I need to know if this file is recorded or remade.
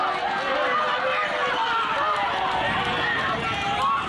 recorded